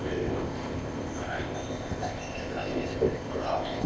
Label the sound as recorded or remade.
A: remade